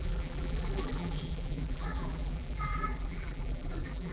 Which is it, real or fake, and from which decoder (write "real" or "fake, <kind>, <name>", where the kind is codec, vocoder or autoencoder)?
fake, vocoder, BigVGAN v2